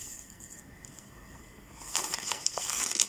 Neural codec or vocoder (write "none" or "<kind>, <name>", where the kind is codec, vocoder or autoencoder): codec, SNAC